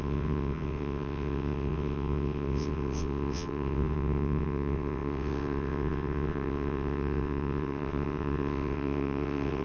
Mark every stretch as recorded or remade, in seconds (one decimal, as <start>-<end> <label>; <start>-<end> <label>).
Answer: 0.0-9.6 remade